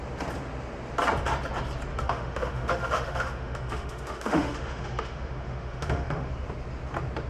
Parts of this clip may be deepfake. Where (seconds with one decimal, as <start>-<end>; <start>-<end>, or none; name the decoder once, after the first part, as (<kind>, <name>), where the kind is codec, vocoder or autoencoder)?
1.9-6.3 (autoencoder, DAC-VAE)